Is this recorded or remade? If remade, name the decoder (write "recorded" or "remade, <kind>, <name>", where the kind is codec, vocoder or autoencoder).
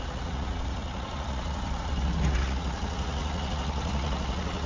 remade, vocoder, Vocos